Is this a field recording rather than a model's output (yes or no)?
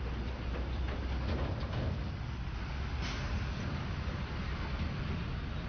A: yes